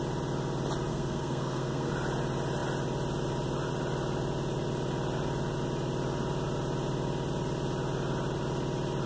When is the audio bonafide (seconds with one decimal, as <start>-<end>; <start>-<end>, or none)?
0.0-0.9; 1.9-9.1